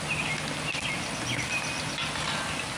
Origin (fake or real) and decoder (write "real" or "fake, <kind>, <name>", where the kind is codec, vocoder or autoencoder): real